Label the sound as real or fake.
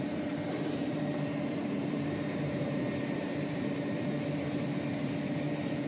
fake